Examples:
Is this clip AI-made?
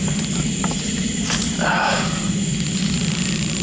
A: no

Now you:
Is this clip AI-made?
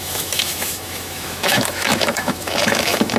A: yes